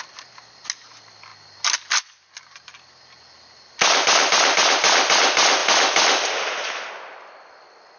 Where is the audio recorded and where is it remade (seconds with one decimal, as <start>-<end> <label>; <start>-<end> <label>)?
0.0-8.0 recorded